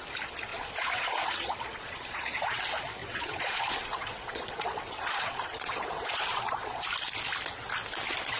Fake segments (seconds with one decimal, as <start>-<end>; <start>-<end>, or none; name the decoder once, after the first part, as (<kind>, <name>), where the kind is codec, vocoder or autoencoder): 0.5-2.6 (vocoder, Vocos); 3.0-6.8